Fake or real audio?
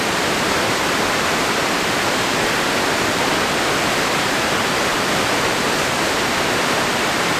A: fake